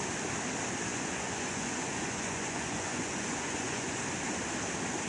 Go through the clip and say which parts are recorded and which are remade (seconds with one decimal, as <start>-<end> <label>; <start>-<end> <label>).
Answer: 0.0-0.9 recorded; 0.9-4.0 remade; 4.0-5.1 recorded